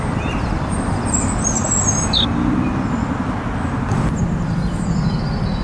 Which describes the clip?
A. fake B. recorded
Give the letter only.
B